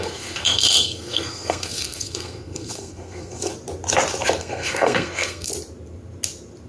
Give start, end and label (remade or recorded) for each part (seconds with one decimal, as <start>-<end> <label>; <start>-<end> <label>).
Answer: 0.0-3.5 remade; 3.5-4.4 recorded; 4.4-5.5 remade; 5.5-6.7 recorded